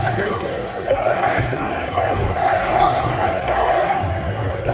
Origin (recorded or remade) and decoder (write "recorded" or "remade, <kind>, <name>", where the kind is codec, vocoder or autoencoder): remade, codec, SNAC